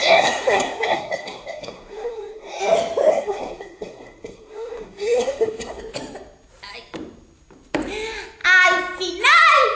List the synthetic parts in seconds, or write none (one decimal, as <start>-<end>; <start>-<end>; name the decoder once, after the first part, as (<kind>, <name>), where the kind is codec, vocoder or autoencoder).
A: 0.0-2.6 (codec, SNAC); 3.1-5.8